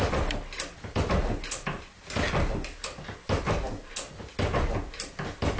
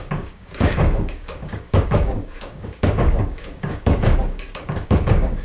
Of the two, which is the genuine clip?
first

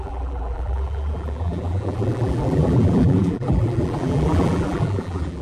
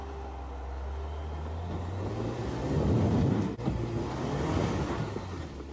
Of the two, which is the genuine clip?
second